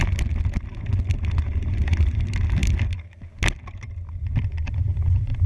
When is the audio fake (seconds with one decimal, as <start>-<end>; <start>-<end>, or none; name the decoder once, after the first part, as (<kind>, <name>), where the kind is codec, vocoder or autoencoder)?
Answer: none